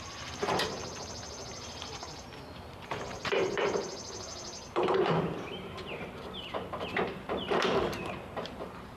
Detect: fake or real fake